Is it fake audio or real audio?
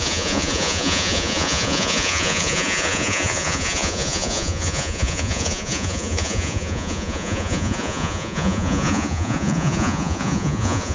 fake